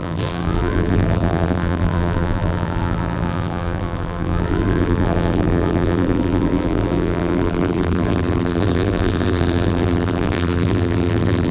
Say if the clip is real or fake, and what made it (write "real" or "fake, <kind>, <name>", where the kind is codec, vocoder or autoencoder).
fake, vocoder, BigVGAN v2